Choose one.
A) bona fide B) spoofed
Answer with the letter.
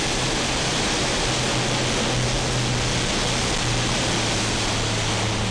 A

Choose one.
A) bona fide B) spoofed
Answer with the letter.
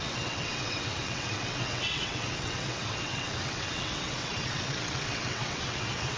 B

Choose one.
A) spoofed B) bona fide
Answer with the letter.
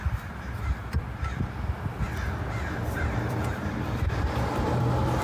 A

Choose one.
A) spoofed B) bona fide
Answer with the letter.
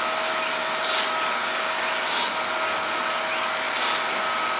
B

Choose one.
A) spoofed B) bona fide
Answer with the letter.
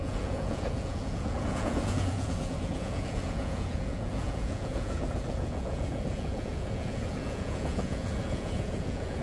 A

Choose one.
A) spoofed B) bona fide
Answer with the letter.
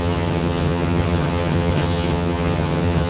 A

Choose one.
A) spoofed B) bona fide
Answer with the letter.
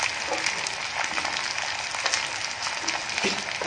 B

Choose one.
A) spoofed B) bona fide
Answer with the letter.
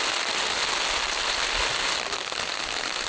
B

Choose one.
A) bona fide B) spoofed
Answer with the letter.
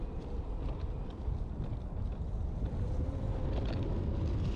A